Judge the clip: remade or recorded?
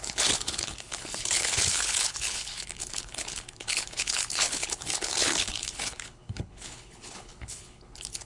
remade